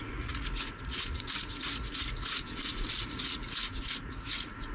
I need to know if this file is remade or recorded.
remade